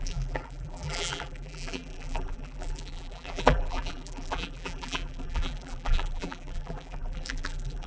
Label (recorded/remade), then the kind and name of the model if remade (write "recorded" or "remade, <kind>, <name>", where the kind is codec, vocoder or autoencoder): remade, vocoder, BigVGAN v2